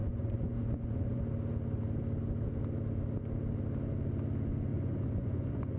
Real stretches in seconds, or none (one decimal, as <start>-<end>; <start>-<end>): 1.2-4.7